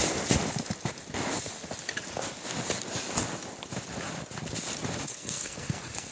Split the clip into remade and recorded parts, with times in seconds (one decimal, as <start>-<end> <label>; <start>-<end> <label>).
0.0-5.1 recorded; 5.1-6.1 remade